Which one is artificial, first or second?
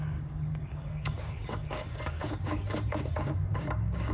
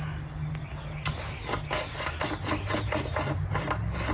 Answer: first